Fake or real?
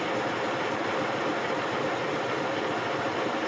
real